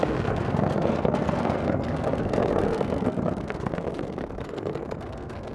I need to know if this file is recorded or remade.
remade